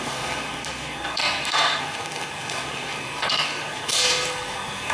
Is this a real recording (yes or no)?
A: no